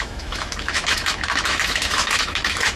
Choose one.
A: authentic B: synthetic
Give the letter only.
B